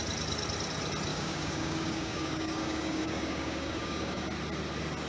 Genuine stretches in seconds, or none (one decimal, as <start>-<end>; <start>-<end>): 0.0-1.1; 4.2-5.1